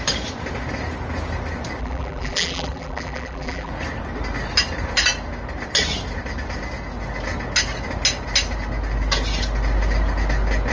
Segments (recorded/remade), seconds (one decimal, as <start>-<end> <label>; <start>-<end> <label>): 0.0-1.8 recorded; 1.8-3.7 remade; 3.7-10.7 recorded